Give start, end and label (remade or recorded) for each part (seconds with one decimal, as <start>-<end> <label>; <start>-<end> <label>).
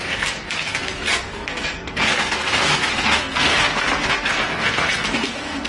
0.0-5.7 remade